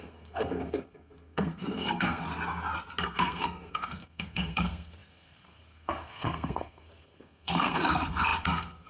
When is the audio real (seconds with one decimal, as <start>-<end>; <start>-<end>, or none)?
2.3-3.0